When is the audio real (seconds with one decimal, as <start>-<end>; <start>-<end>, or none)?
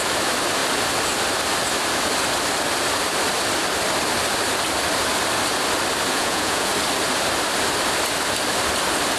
0.0-6.1; 6.7-9.2